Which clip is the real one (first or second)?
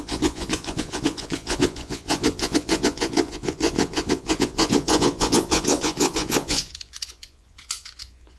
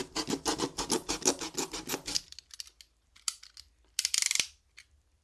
second